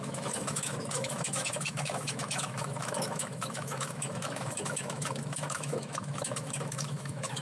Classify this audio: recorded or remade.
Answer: remade